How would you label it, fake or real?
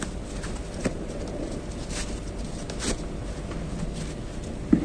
real